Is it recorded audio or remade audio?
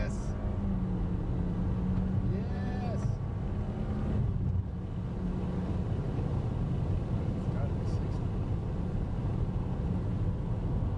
recorded